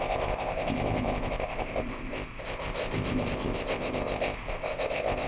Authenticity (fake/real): fake